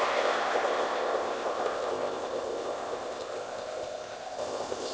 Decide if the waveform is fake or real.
fake